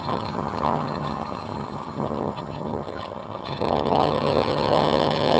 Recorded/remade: remade